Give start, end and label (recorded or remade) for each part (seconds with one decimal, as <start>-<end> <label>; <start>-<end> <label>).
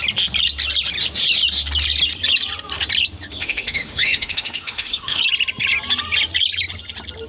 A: 0.0-3.4 recorded; 3.4-5.2 remade; 5.2-7.3 recorded